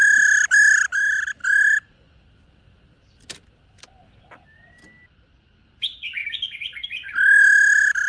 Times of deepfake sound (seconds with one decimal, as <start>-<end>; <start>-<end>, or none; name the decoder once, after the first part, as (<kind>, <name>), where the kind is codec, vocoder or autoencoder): 1.4-2.7 (vocoder, BigVGAN v2); 6.2-7.1